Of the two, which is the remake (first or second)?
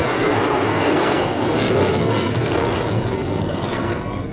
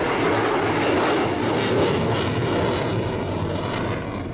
first